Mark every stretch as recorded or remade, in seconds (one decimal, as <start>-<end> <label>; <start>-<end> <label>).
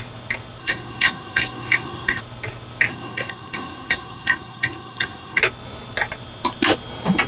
0.0-0.6 recorded; 0.6-2.2 remade; 2.2-2.9 recorded; 2.9-5.4 remade; 5.4-7.3 recorded